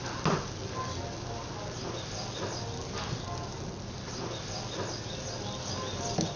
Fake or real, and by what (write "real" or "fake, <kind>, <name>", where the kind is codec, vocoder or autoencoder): real